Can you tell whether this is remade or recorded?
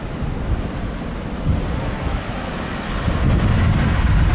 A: recorded